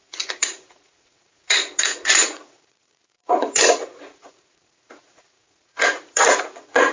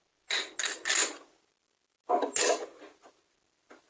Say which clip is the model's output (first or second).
first